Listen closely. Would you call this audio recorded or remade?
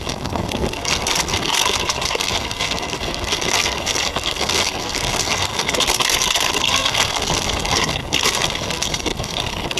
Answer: remade